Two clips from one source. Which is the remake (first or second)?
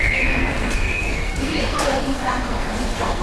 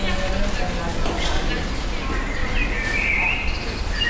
first